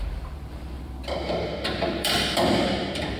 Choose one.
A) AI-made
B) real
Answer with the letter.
A